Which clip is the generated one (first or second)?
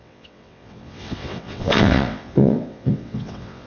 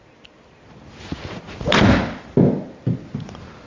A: first